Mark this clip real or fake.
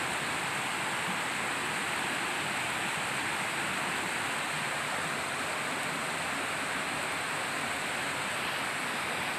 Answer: real